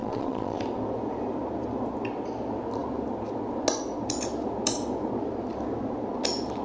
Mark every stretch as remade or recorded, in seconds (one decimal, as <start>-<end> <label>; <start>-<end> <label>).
0.0-0.6 remade; 0.6-6.6 recorded